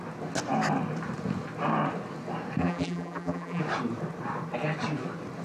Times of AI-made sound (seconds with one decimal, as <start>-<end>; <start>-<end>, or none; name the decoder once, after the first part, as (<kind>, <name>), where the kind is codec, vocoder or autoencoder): 2.6-3.6 (vocoder, BigVGAN v2)